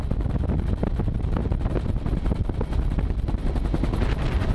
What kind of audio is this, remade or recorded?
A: recorded